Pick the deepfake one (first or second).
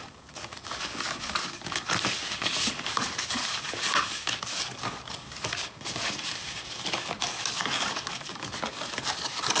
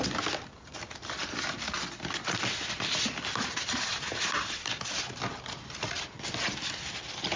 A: first